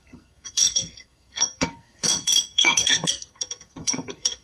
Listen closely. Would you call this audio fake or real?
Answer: fake